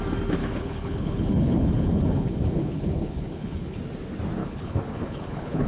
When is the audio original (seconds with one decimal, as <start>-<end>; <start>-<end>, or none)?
0.0-0.4; 3.8-4.4